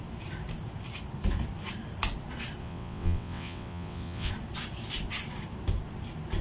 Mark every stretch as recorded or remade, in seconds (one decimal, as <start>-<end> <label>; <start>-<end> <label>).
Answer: 0.0-2.6 recorded; 2.6-4.3 remade; 4.3-6.4 recorded